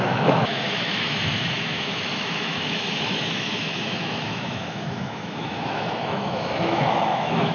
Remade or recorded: remade